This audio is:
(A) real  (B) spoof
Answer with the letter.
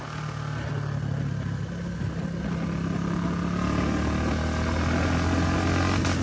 A